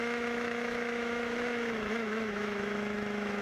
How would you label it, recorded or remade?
remade